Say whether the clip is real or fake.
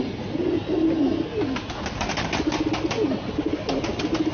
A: real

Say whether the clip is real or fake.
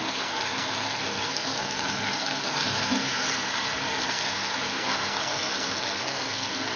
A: fake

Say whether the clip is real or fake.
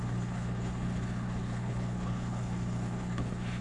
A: fake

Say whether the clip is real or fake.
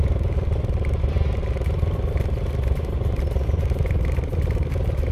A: fake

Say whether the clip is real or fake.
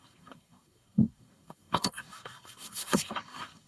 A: fake